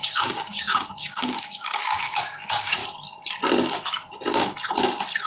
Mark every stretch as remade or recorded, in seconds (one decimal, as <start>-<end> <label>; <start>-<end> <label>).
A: 0.0-2.8 remade; 2.8-5.3 recorded